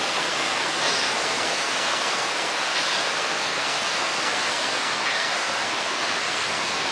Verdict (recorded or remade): remade